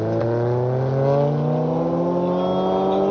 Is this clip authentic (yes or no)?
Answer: yes